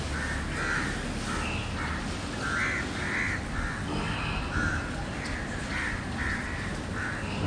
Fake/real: real